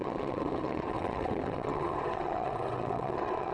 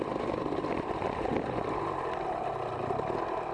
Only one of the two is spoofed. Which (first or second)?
first